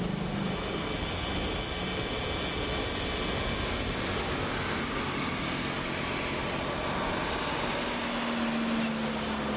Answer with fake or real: real